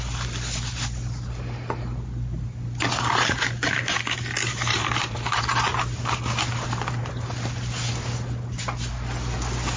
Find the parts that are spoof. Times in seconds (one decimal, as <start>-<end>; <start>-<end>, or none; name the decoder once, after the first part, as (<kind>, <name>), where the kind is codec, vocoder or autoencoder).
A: 4.7-5.4 (vocoder, BigVGAN v2)